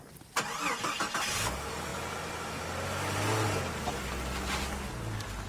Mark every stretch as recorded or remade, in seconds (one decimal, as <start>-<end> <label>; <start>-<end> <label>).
0.0-5.5 recorded